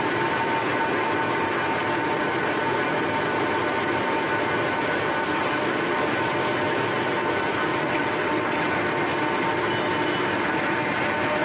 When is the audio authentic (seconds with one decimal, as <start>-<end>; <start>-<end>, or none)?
0.0-7.7; 8.7-11.4